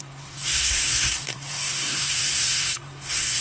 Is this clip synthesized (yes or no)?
yes